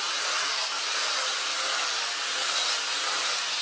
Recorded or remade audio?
recorded